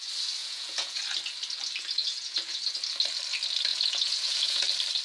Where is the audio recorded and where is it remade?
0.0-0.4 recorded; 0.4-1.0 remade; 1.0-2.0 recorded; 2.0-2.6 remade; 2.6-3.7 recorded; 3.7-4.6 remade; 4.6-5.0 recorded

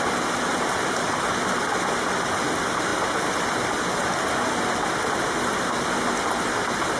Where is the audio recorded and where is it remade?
0.0-7.0 recorded

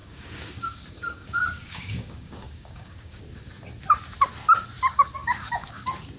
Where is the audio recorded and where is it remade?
0.0-3.2 remade; 3.2-5.2 recorded; 5.2-5.8 remade; 5.8-6.2 recorded

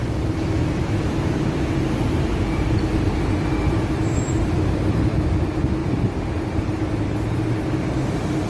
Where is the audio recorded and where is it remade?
0.0-2.9 recorded; 2.9-4.6 remade; 4.6-5.8 recorded; 5.8-7.4 remade; 7.4-8.5 recorded

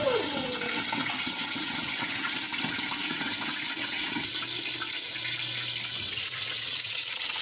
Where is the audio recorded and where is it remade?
0.0-4.3 remade; 4.3-5.9 recorded; 5.9-7.4 remade

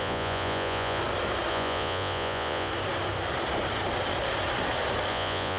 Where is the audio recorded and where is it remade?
0.0-1.0 remade; 1.0-1.5 recorded; 1.5-2.7 remade; 2.7-5.1 recorded; 5.1-5.6 remade

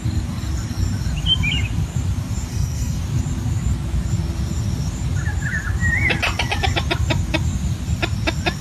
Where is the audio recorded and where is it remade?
0.0-2.5 recorded; 2.5-3.0 remade; 3.0-8.6 recorded